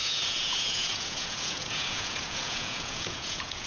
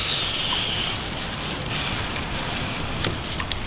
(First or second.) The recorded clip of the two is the second